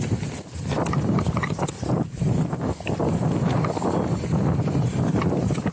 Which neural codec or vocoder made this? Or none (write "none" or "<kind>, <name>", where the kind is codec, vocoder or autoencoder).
none